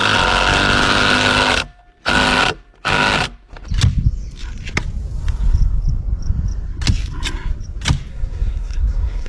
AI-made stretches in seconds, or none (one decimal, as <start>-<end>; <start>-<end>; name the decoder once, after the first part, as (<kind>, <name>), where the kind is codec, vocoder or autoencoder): 8.1-9.3 (codec, SNAC)